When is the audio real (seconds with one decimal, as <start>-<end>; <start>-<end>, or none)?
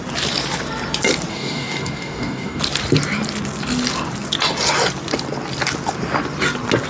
0.0-1.3; 2.6-6.9